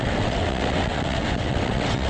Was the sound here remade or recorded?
remade